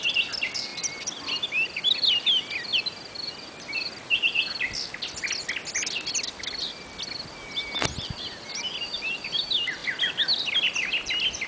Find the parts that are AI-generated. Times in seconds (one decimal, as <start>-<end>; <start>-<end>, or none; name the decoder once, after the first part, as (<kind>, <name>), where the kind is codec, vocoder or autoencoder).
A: none